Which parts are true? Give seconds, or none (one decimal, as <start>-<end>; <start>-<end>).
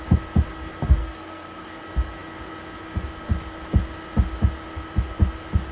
0.0-1.0; 1.8-5.7